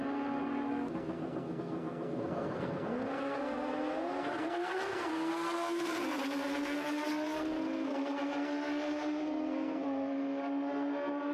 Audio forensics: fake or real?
fake